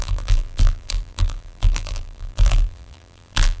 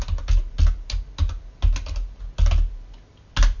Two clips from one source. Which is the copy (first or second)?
first